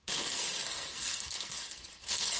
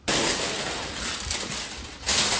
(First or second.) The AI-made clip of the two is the first